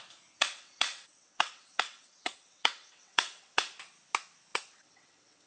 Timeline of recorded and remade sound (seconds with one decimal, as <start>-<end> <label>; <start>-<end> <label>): 0.0-0.4 recorded; 0.4-3.7 remade; 3.7-4.5 recorded; 4.5-5.5 remade